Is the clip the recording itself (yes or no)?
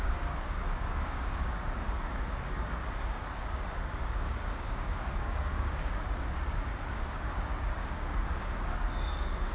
no